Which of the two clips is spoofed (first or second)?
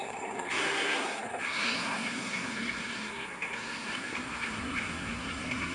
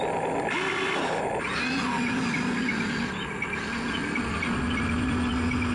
first